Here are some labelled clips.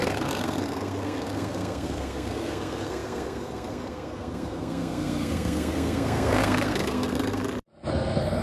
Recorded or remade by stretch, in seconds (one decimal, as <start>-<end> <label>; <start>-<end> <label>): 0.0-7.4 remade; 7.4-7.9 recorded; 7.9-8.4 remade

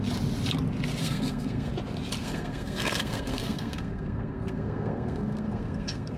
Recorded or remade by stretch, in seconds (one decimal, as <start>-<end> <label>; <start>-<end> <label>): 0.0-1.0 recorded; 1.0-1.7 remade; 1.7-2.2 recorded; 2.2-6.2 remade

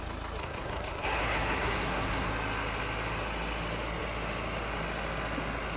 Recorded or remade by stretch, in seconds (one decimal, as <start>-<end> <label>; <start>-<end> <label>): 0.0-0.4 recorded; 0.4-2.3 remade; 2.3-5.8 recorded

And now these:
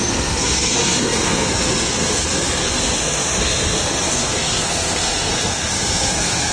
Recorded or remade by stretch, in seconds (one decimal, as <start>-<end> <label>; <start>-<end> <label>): 0.0-6.5 remade